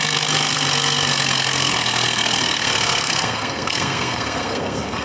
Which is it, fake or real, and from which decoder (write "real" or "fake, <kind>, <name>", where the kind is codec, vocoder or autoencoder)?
fake, codec, SNAC